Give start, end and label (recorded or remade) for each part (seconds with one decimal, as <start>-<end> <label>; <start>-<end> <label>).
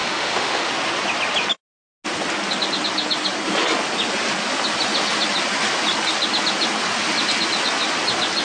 0.0-0.7 remade; 0.7-8.4 recorded